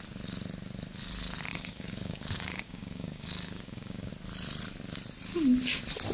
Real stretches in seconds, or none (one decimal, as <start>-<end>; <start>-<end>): 0.0-1.5; 4.1-6.1